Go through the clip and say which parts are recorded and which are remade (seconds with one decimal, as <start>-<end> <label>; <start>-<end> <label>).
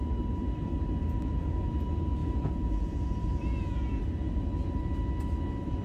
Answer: 0.0-1.0 recorded; 1.0-1.7 remade; 1.7-2.2 recorded; 2.2-4.0 remade; 4.0-5.8 recorded